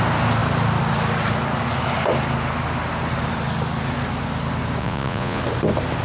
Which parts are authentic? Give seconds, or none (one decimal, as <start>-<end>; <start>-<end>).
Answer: 0.0-4.8; 5.4-6.0